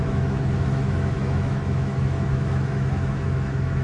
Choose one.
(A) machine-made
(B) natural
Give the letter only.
A